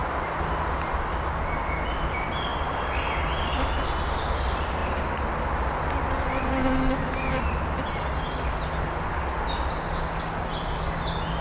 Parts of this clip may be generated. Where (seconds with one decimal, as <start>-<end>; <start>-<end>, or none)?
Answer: none

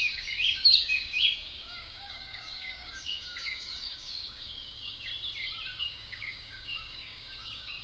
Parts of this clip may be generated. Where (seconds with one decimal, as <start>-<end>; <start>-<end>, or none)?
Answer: 0.0-5.1; 5.8-7.8